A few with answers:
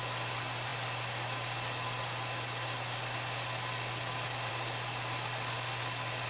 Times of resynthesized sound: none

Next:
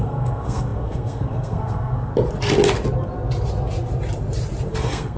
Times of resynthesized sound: 0.0-2.1 (codec, SNAC); 4.8-5.2

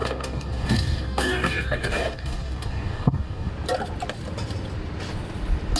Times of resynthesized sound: 0.0-3.5 (codec, DAC)